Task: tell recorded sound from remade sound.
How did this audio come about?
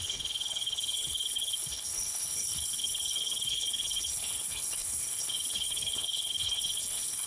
remade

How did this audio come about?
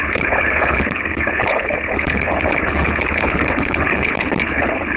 remade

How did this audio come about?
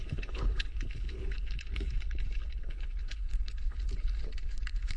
remade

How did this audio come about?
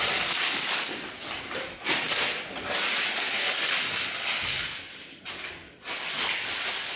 recorded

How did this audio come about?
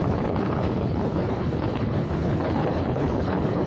remade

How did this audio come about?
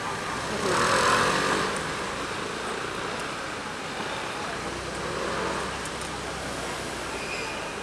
recorded